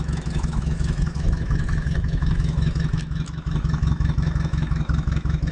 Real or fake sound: fake